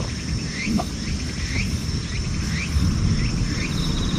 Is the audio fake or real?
real